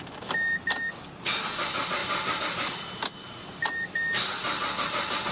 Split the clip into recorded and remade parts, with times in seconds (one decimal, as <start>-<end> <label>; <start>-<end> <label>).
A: 0.0-5.3 recorded